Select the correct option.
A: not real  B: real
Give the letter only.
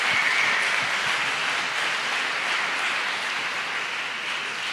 B